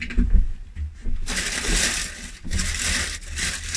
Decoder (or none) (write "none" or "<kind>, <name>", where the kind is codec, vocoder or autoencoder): none